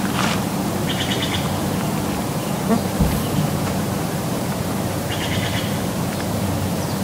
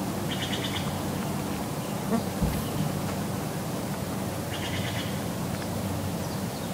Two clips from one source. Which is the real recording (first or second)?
second